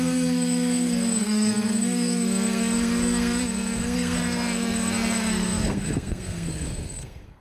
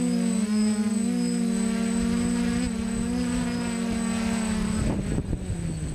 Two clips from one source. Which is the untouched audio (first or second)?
second